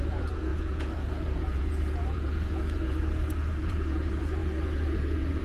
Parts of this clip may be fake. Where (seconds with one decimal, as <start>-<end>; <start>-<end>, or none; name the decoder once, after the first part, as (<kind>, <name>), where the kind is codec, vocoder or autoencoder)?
0.0-5.4 (vocoder, Vocos)